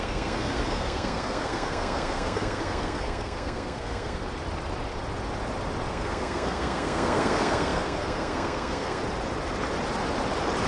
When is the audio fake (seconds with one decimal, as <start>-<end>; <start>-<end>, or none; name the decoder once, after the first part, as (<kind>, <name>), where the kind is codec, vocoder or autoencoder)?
0.0-4.2 (codec, SNAC); 5.9-9.0